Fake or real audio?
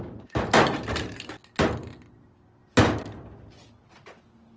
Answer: real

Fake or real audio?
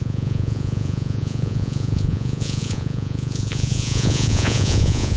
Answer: fake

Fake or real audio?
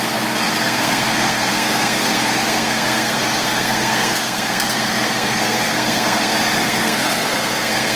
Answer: fake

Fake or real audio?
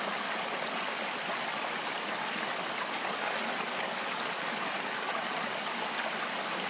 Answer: real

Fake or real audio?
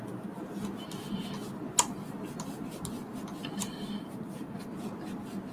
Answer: real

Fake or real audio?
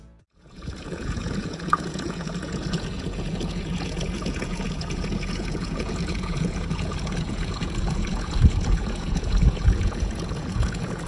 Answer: fake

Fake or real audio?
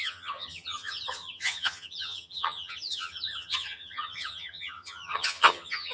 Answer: fake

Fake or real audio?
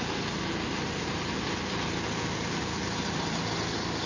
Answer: real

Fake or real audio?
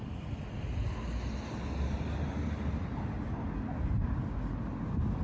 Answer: real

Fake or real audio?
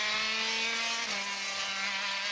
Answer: real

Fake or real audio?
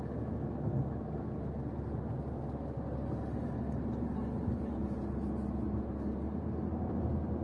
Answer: real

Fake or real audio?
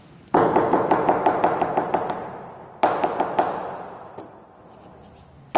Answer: real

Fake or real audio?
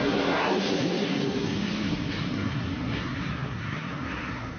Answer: fake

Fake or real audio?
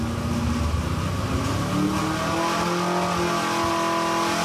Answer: real